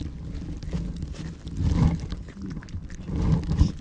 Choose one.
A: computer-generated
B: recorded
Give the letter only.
B